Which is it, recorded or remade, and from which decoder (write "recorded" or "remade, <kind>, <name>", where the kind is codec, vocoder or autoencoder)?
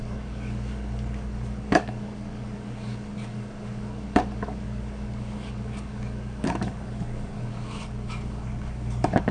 remade, codec, DAC